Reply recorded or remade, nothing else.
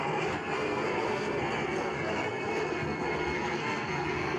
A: remade